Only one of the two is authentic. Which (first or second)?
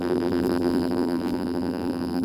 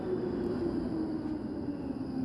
second